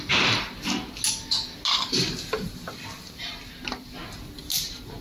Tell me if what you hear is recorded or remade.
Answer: recorded